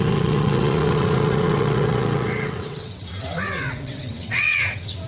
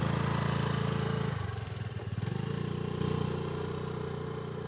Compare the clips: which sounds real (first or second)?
second